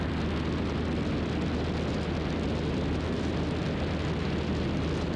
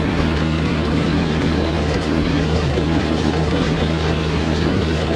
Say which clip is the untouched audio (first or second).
first